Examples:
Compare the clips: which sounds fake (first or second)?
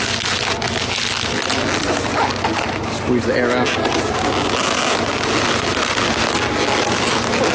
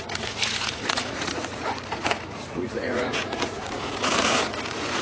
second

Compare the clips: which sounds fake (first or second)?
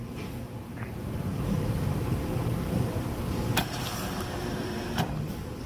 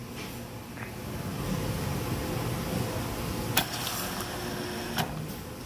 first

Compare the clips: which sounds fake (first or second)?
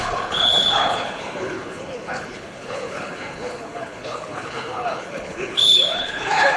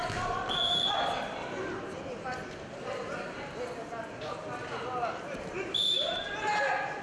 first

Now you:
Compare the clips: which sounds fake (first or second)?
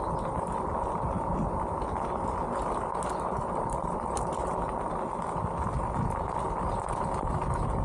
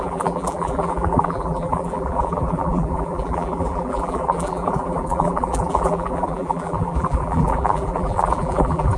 second